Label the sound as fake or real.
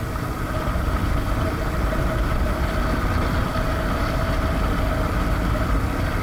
fake